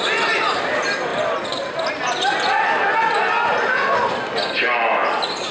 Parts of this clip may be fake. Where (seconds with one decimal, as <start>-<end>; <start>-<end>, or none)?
none